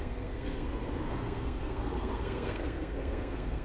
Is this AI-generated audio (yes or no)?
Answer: yes